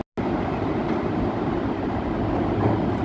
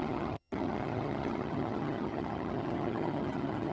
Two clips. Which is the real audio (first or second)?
first